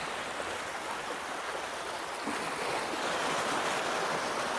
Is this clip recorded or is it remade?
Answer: recorded